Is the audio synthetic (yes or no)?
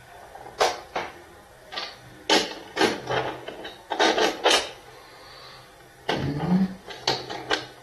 no